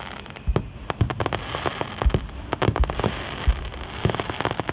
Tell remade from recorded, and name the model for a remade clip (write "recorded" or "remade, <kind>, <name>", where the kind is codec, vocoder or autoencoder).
recorded